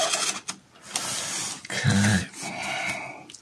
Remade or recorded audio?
recorded